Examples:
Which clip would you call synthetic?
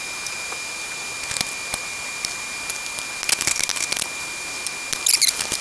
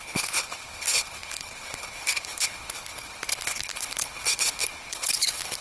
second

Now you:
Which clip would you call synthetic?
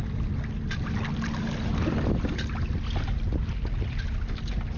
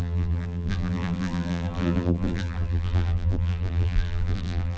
second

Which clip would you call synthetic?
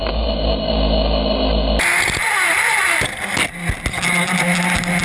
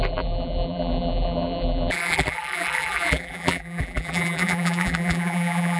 second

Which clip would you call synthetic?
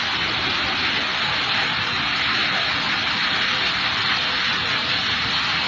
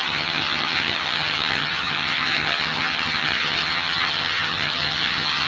second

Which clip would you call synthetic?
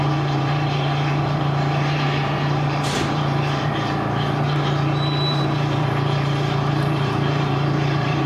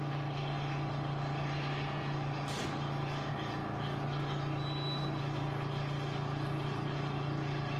first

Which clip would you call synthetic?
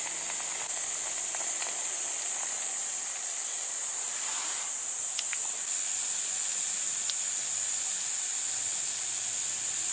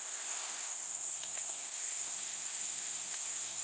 second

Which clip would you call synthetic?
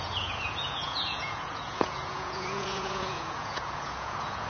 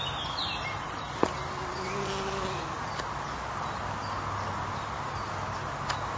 first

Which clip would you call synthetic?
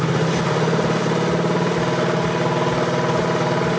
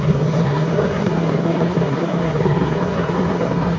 second